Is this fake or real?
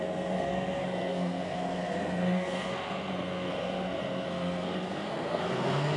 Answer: fake